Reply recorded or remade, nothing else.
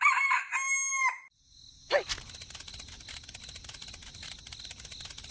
recorded